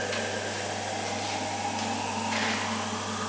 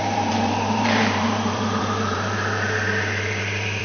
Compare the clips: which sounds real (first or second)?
first